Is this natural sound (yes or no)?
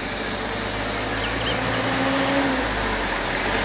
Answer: yes